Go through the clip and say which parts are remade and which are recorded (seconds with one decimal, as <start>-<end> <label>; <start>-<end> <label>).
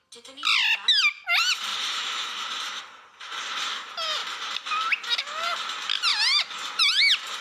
0.0-1.7 recorded; 1.7-2.8 remade; 2.8-6.1 recorded; 6.1-7.0 remade; 7.0-7.4 recorded